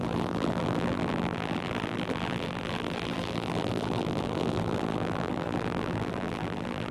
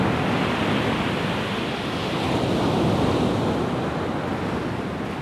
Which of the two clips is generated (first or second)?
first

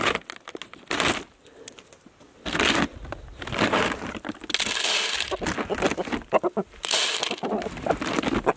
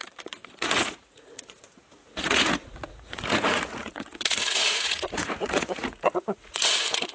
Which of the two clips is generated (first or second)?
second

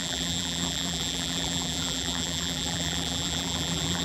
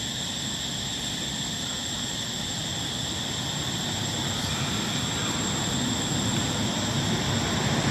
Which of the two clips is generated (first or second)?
first